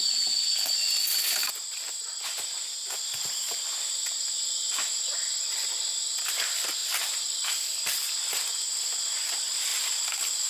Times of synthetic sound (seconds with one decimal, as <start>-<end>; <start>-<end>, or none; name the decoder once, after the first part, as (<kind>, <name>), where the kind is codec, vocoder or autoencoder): 6.8-8.1 (vocoder, BigVGAN v2); 9.7-10.5